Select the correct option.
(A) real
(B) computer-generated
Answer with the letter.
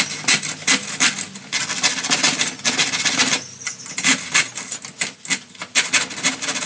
A